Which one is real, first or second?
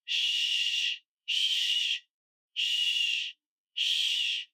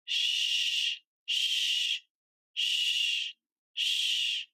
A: second